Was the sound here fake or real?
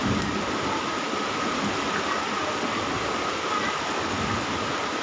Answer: real